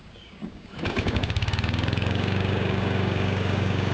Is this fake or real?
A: fake